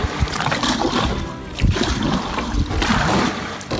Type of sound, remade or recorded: remade